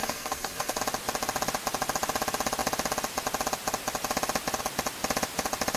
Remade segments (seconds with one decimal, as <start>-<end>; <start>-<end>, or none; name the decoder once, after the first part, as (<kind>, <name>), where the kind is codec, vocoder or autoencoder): 0.0-0.8 (codec, SNAC)